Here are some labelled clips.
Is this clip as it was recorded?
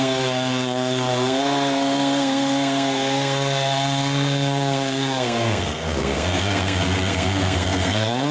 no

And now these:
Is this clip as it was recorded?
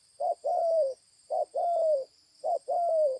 no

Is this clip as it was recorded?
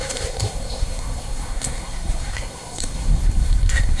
no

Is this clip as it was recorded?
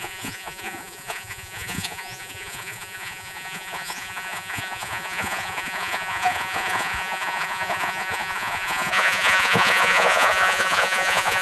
no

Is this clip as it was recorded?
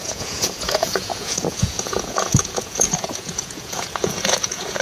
no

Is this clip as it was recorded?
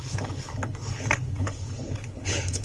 no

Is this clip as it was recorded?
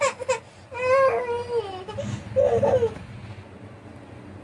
yes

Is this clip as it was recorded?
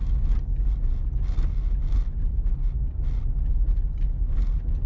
yes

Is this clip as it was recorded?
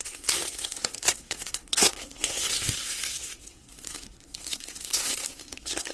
no